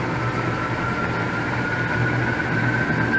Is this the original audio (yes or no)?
yes